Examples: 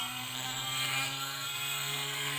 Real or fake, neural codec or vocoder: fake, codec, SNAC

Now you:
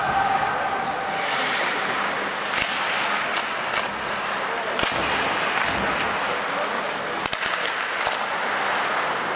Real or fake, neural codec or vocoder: real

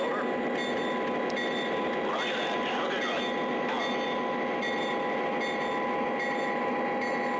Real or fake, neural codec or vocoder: real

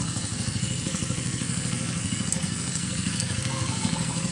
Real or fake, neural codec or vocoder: fake, codec, SNAC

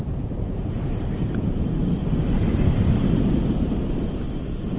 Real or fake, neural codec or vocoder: fake, vocoder, BigVGAN v2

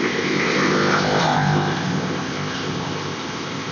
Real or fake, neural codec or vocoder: fake, codec, ZipCodec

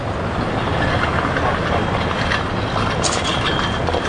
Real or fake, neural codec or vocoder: real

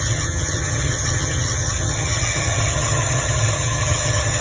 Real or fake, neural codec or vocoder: fake, vocoder, HiFi-GAN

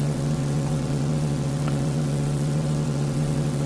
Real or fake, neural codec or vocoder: fake, vocoder, WaveNeXt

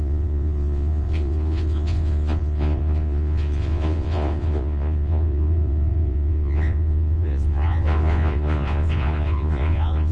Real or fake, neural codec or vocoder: fake, vocoder, Vocos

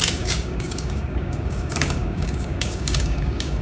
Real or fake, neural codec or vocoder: fake, codec, DAC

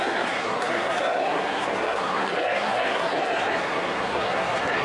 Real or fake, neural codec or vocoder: fake, codec, SNAC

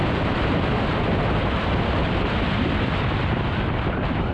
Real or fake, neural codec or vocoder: real